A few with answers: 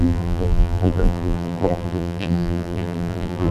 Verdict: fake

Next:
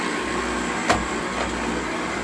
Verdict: real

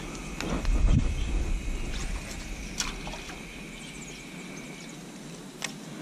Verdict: real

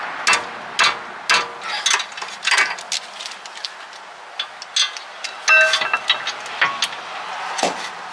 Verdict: real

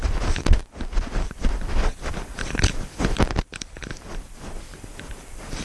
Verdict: fake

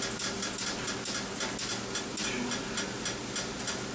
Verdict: real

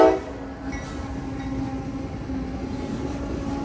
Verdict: real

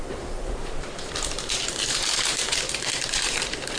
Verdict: fake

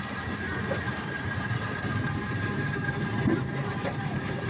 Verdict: fake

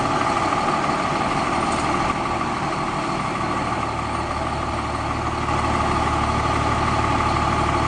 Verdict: real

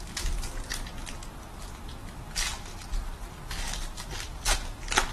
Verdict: real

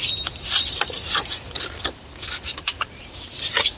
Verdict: real